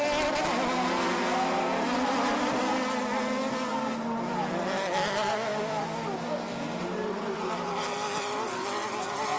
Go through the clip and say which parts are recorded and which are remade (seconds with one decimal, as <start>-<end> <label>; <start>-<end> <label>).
0.0-9.4 recorded